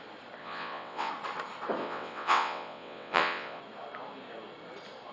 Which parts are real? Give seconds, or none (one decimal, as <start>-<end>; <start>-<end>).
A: 0.0-0.4; 1.1-1.8; 3.6-5.1